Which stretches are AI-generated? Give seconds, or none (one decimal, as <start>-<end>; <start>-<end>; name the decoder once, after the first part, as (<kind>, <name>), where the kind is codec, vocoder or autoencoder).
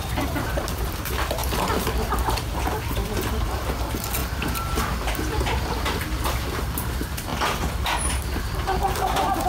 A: none